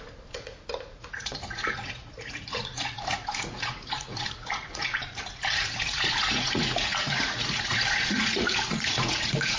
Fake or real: fake